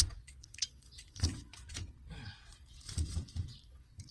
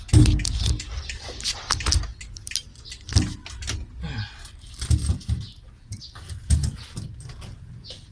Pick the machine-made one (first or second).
first